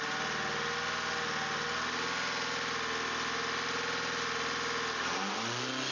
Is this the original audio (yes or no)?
yes